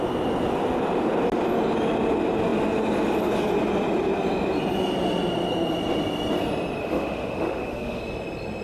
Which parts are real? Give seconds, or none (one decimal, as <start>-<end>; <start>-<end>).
0.0-6.8; 8.0-8.6